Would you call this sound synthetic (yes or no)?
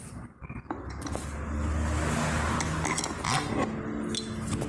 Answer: no